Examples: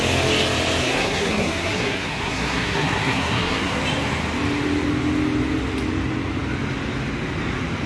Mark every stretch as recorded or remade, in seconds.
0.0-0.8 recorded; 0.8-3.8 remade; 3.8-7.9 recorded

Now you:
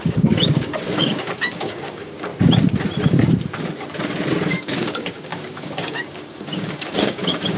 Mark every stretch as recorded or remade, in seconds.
0.0-2.3 remade; 2.3-4.5 recorded; 4.5-7.6 remade

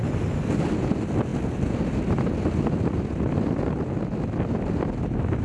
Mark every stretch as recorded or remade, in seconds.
0.0-5.4 recorded

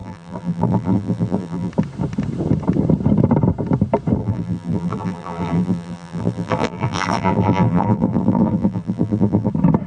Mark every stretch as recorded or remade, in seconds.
0.0-1.7 remade; 1.7-4.2 recorded; 4.2-9.5 remade; 9.5-9.9 recorded

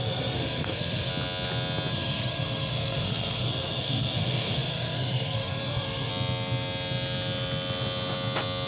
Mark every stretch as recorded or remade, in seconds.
0.0-1.1 remade; 1.1-1.9 recorded; 1.9-6.1 remade; 6.1-8.7 recorded

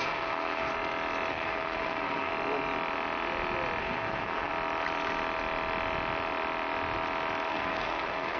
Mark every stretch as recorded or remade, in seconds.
0.0-0.7 remade; 0.7-1.3 recorded; 1.3-2.3 remade; 2.3-3.8 recorded; 3.8-4.5 remade; 4.5-7.5 recorded; 7.5-8.4 remade

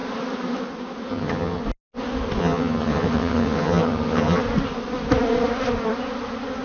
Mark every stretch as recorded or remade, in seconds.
0.0-1.1 recorded; 1.1-1.6 remade; 1.6-2.4 recorded; 2.4-4.4 remade; 4.4-6.6 recorded

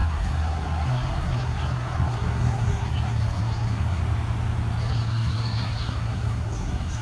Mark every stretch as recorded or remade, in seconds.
0.0-4.0 remade; 4.0-4.8 recorded; 4.8-7.0 remade